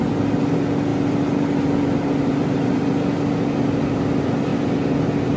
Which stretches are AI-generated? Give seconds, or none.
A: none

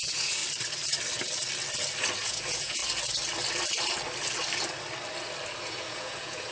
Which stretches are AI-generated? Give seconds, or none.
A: 0.0-0.4; 2.2-2.8; 5.6-6.5

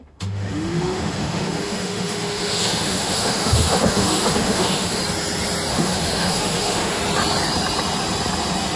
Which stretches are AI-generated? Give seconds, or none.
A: 0.0-5.0; 5.7-7.0

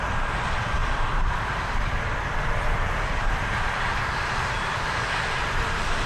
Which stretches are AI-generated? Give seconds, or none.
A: 0.0-0.8; 1.3-6.1